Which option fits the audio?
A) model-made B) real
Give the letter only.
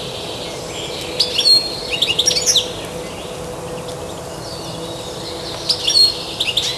B